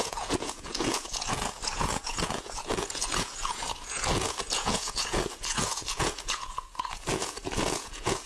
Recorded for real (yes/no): no